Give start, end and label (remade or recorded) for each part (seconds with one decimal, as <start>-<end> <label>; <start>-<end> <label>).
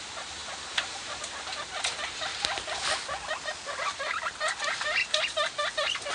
0.0-6.1 recorded